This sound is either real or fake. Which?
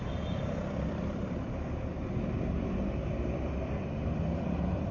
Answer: fake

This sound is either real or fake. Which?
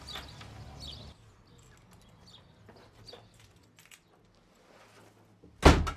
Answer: real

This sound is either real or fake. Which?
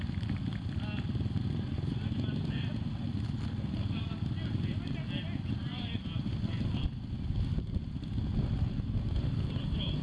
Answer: real